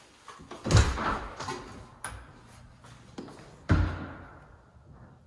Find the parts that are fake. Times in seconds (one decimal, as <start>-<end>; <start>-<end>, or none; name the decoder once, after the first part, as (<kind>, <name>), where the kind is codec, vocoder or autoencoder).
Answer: none